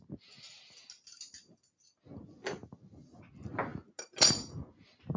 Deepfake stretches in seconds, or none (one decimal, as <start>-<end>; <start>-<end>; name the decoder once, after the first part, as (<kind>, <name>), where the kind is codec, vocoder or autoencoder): none